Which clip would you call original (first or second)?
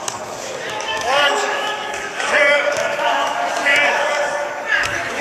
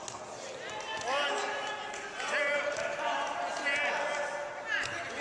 second